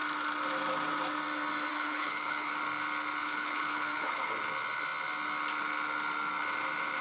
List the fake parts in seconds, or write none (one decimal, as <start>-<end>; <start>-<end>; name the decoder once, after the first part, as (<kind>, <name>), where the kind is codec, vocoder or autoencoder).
1.7-2.5 (codec, HILCodec); 3.2-4.3

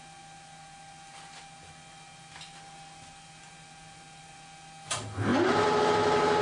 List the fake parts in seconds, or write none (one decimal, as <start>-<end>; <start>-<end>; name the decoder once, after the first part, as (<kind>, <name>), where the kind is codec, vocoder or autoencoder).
none

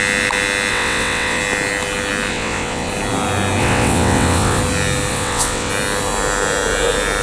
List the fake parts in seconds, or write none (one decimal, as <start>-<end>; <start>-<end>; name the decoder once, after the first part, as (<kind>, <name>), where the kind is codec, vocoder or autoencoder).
0.7-1.4 (vocoder, WaveNeXt); 2.3-2.9; 3.6-4.6; 5.1-5.7

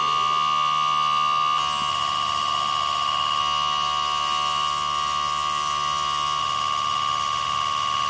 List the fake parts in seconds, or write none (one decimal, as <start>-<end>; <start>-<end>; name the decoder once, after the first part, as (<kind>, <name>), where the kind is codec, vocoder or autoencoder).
1.9-3.4 (autoencoder, DAC-VAE); 6.4-8.1

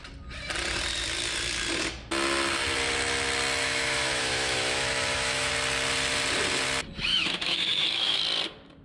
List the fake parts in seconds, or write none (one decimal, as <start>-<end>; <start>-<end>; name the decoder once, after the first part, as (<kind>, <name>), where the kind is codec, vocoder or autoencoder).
3.6-5.5 (autoencoder, DAC-VAE); 7.1-8.2